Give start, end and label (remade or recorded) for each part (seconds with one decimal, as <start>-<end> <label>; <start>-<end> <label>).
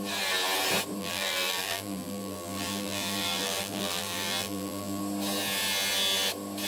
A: 0.0-1.0 recorded; 1.0-5.0 remade; 5.0-6.7 recorded